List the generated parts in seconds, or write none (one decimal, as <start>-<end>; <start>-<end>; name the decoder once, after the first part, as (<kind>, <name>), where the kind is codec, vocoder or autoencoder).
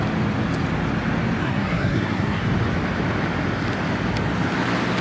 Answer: 1.4-2.4 (codec, SNAC)